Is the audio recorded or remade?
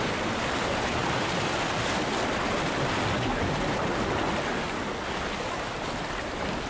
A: recorded